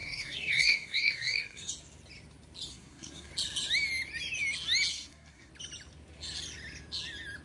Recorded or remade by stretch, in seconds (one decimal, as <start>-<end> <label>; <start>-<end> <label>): 0.0-1.7 remade; 1.7-2.7 recorded; 2.7-3.3 remade; 3.3-4.9 recorded; 4.9-5.5 remade; 5.5-7.4 recorded